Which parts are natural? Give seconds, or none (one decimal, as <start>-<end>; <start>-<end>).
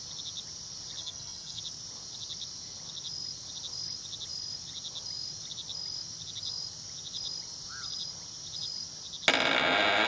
0.0-1.0; 1.6-10.1